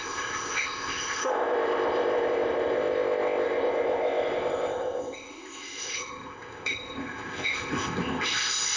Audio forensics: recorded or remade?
remade